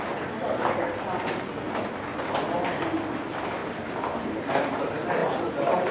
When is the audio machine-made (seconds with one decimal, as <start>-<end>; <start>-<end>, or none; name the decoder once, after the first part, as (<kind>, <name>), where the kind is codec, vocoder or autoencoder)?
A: 2.1-2.6 (vocoder, BigVGAN v2); 3.6-4.2; 5.2-5.9